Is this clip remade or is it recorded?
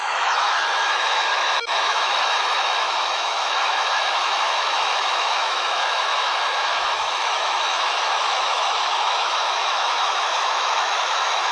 remade